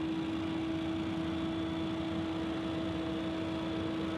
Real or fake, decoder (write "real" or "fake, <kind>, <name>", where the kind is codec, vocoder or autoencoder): real